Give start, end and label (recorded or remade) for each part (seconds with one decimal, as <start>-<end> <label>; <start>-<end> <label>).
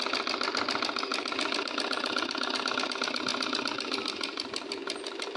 0.0-5.4 recorded